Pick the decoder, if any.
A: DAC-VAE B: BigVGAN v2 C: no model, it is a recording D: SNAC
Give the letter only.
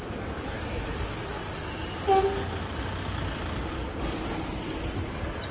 C